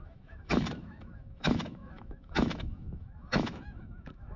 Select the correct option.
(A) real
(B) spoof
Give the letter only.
B